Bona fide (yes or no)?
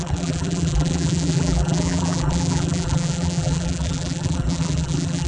no